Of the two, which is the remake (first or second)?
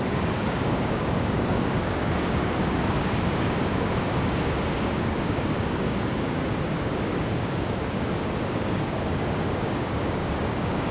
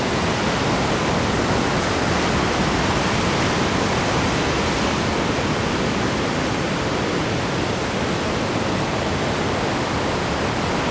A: first